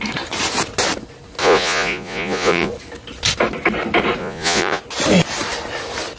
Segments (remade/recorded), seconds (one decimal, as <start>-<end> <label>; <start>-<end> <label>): 0.0-1.4 recorded; 1.4-2.7 remade; 2.7-4.2 recorded; 4.2-4.8 remade; 4.8-6.2 recorded